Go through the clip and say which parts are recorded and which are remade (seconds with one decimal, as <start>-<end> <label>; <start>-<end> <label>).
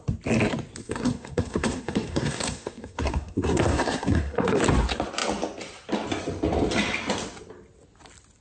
0.0-0.8 recorded; 0.8-4.6 remade; 4.6-8.4 recorded